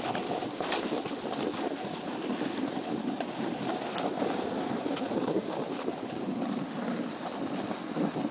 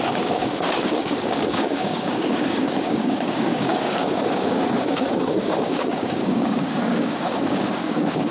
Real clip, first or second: first